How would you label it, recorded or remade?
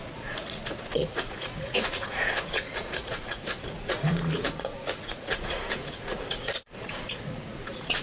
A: remade